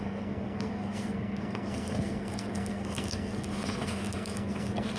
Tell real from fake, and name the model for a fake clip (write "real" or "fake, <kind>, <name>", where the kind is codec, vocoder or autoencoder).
fake, codec, SNAC